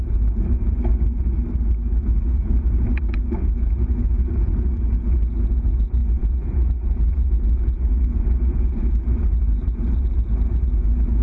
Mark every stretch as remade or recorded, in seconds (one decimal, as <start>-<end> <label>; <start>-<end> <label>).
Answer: 0.0-0.9 remade; 0.9-2.2 recorded; 2.2-11.2 remade